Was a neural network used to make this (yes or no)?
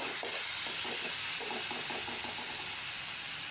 no